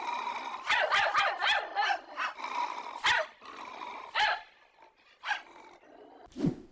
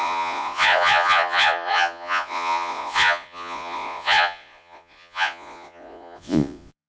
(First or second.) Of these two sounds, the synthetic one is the second